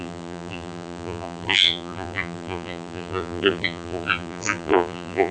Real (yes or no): no